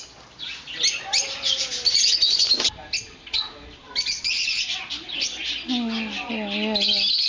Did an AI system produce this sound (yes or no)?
no